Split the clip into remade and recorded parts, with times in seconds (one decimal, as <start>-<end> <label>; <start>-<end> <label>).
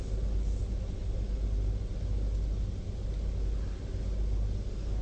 0.0-5.0 recorded